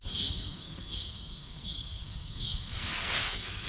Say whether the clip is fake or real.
fake